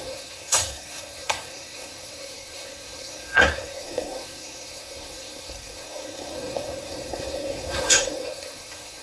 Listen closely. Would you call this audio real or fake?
fake